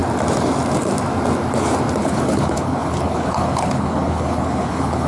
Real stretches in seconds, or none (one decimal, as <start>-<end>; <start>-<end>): 0.0-2.0